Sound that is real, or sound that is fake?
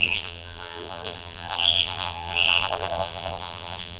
fake